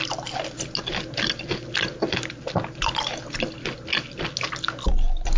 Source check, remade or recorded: recorded